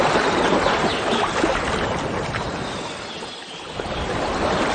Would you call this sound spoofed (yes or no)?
no